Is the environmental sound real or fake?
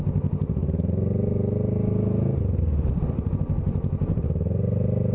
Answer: real